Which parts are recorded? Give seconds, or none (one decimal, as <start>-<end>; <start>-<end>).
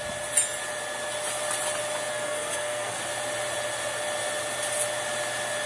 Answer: 0.0-2.1; 3.0-5.7